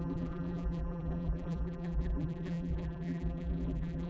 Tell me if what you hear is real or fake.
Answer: fake